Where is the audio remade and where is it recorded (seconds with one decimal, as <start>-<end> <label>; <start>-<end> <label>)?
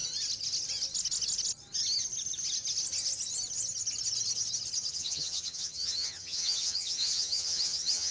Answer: 0.0-4.9 recorded; 4.9-8.1 remade